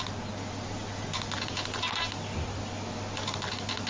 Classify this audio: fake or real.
real